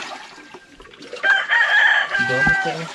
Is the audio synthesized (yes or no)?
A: yes